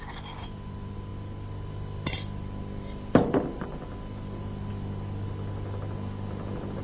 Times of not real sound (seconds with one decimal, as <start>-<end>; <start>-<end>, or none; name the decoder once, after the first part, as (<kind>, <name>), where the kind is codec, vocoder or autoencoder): none